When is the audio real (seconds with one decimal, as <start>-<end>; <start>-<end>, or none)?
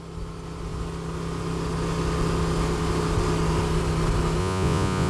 0.0-4.4